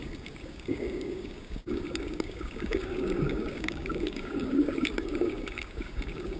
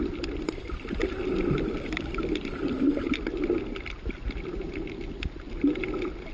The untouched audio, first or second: second